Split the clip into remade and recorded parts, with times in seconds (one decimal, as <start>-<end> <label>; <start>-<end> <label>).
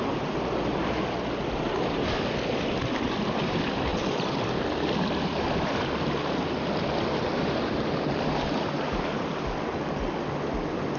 0.0-11.0 recorded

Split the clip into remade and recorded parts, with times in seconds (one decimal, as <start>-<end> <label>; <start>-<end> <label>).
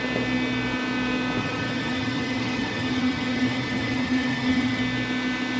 0.0-1.4 recorded; 1.4-4.8 remade; 4.8-5.6 recorded